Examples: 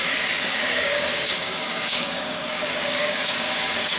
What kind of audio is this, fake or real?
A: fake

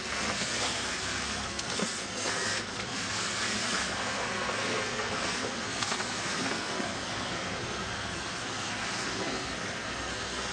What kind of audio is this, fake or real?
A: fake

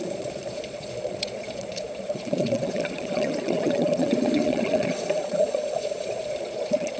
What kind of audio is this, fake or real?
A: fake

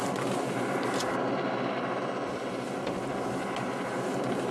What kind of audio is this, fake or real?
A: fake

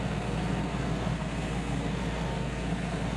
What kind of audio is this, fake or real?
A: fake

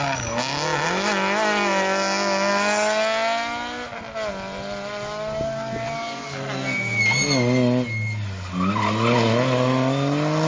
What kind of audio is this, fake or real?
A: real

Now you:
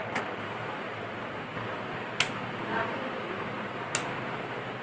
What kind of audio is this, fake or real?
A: real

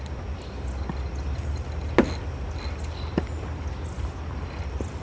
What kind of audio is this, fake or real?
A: real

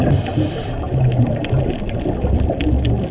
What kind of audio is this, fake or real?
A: real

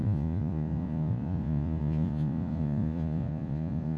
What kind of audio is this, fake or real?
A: fake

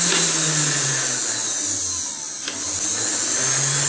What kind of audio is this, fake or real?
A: real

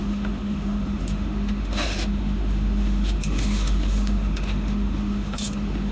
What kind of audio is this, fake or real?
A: fake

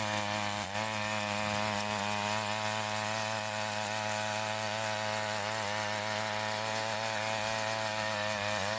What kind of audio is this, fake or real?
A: real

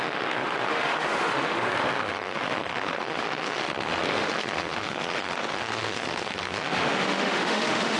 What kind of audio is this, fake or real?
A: fake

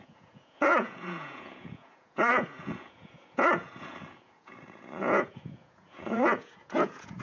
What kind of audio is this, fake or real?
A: fake